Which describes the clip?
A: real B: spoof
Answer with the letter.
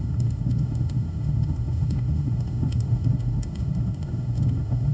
B